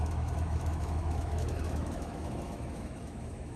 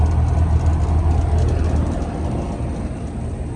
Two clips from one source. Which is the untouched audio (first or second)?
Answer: second